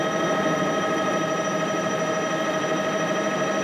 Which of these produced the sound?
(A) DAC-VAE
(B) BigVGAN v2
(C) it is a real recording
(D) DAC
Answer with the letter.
B